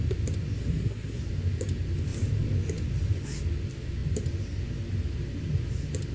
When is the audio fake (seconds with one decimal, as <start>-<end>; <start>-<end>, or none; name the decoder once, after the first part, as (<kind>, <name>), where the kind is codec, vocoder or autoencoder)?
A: 0.6-1.2 (codec, SNAC)

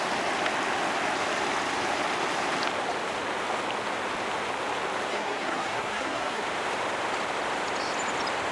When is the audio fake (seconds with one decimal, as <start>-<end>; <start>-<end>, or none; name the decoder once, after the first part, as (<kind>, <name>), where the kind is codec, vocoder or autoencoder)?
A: 5.1-6.4 (codec, SNAC)

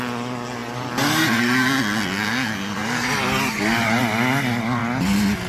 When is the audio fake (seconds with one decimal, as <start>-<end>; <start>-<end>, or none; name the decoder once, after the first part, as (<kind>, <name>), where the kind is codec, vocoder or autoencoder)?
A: none

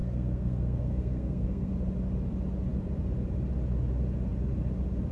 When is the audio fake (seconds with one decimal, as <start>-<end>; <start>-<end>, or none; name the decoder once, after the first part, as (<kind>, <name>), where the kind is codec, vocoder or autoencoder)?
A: 0.0-1.7 (codec, SNAC)

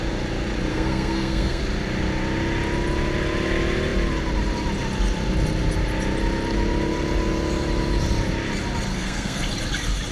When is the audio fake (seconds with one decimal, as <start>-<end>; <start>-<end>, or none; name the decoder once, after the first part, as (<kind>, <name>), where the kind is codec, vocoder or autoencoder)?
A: 0.7-1.6 (codec, SNAC); 8.9-9.4

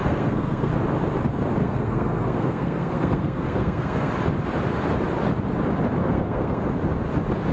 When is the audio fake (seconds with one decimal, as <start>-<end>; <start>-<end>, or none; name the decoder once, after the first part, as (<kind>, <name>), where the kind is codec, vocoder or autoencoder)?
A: 0.0-0.7 (codec, SNAC); 1.6-4.1; 6.0-6.6

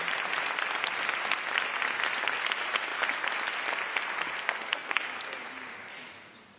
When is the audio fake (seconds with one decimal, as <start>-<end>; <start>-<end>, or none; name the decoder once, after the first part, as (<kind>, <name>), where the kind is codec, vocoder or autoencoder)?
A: 4.4-5.0 (codec, SNAC)

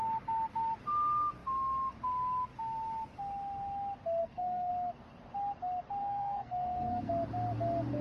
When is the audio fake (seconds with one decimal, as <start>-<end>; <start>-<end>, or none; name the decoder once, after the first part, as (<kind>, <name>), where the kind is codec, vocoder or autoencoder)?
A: 4.2-4.7 (codec, SNAC); 6.0-7.1